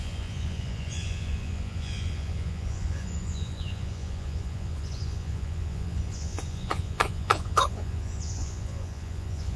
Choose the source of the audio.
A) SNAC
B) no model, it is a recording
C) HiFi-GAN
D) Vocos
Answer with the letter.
D